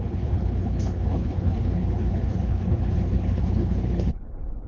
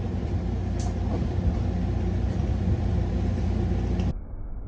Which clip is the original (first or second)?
second